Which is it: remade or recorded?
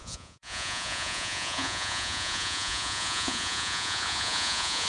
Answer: remade